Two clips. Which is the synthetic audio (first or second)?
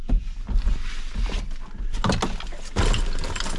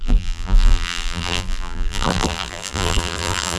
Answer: second